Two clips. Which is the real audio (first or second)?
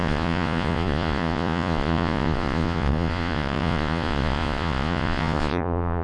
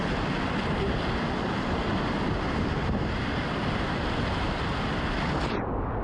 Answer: second